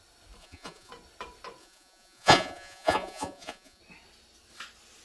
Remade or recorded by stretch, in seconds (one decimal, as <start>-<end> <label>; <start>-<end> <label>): 0.0-0.4 recorded; 0.4-0.9 remade; 0.9-1.6 recorded; 1.6-3.8 remade; 3.8-5.0 recorded